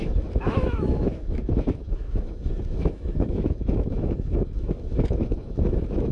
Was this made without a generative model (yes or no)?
no